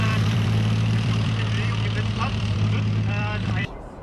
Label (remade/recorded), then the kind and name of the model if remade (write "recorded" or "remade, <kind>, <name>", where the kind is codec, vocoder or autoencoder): remade, vocoder, BigVGAN v2